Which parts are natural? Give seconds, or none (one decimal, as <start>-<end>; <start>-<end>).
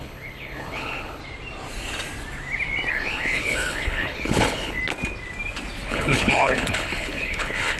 1.2-2.9; 4.8-5.9